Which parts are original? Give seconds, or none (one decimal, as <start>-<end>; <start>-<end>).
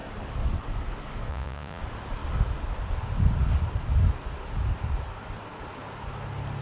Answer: 0.0-1.3; 1.8-6.6